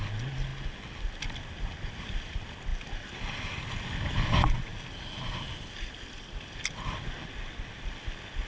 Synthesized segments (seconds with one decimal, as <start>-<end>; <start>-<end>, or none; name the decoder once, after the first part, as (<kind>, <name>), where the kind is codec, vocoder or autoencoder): none